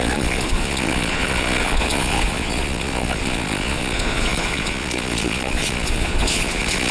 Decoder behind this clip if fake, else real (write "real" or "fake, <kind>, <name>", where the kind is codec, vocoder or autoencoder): fake, vocoder, Vocos